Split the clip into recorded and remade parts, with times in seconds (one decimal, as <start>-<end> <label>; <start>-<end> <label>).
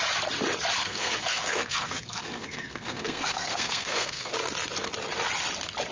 0.0-0.8 recorded; 0.8-4.3 remade; 4.3-5.9 recorded